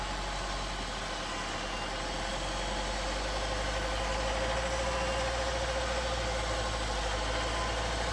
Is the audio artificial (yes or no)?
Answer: no